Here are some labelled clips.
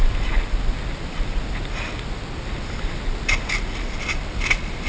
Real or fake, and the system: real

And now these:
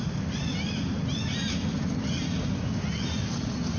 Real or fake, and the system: real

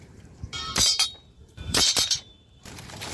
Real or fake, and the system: fake, vocoder, BigVGAN v2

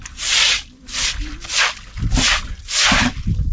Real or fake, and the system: fake, vocoder, BigVGAN v2